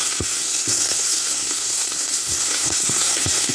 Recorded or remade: remade